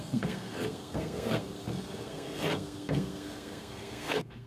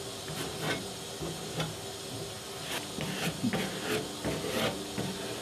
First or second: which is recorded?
second